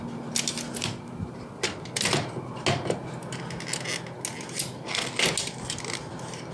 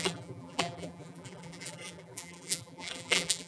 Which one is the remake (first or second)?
second